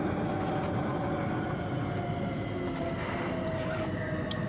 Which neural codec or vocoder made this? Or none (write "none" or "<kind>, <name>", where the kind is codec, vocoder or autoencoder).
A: none